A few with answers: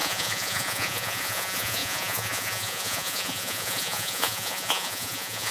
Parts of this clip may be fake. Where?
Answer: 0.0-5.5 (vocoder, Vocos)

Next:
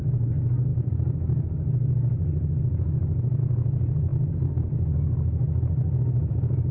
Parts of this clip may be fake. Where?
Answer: none

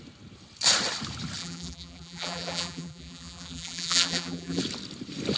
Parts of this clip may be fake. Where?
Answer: 1.4-4.6 (vocoder, BigVGAN v2)

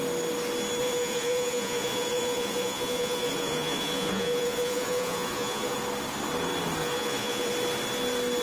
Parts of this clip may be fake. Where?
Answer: 0.8-5.8 (vocoder, Vocos); 6.8-7.5